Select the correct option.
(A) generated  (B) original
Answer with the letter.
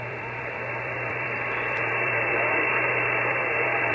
A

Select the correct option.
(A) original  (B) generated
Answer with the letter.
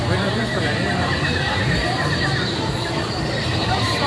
B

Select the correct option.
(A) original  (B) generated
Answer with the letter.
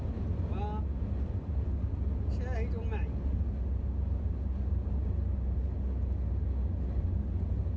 A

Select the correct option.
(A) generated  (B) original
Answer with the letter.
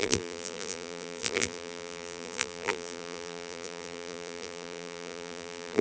A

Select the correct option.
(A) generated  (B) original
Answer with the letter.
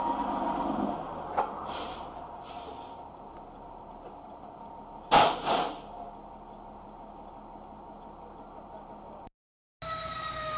B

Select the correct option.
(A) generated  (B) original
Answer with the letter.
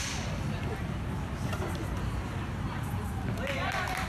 B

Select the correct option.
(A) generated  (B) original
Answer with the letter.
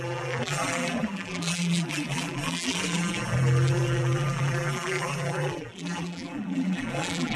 A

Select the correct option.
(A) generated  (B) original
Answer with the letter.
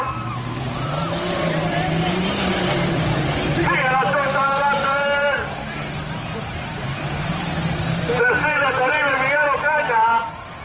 A